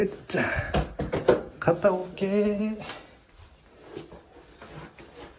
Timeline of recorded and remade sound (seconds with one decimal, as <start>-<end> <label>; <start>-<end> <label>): 0.0-5.4 recorded